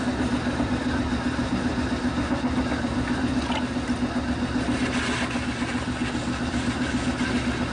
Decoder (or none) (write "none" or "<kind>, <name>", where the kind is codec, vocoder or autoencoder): none